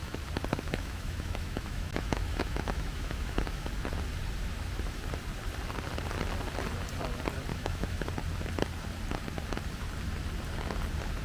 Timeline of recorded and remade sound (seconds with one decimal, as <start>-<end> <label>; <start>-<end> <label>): 0.0-0.5 recorded; 0.5-3.7 remade; 3.7-7.5 recorded; 7.5-8.1 remade; 8.1-11.2 recorded